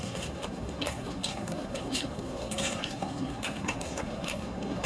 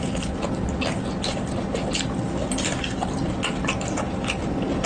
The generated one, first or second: first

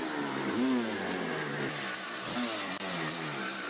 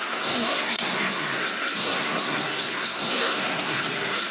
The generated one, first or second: second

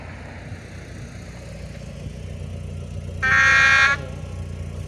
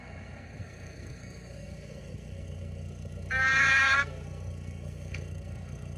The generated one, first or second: second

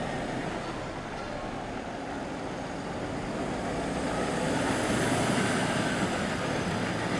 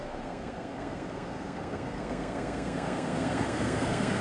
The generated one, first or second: second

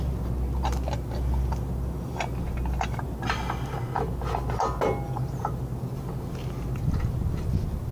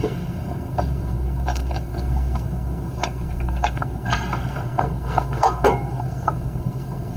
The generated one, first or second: second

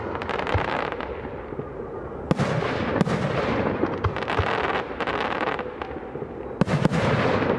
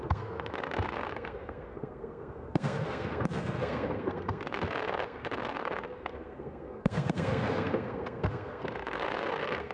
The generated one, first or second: second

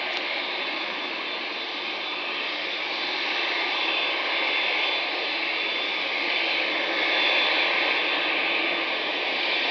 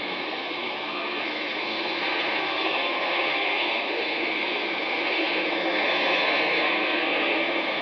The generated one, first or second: second